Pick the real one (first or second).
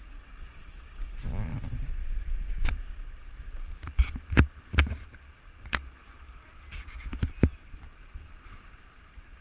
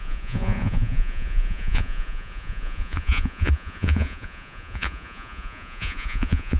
first